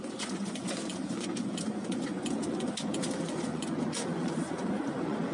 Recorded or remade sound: remade